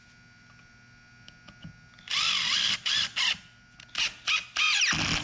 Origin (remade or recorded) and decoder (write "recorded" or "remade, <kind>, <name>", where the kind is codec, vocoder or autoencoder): recorded